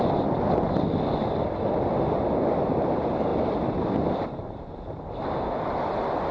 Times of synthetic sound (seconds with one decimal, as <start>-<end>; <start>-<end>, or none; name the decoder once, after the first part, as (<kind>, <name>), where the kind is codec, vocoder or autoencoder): none